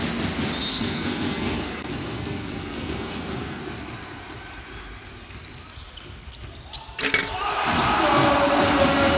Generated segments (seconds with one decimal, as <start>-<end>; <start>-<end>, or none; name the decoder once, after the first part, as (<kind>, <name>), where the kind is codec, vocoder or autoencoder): 0.7-3.6 (codec, SNAC)